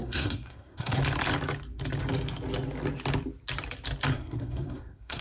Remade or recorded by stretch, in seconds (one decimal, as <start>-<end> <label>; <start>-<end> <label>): 0.0-1.0 remade; 1.0-4.1 recorded; 4.1-5.2 remade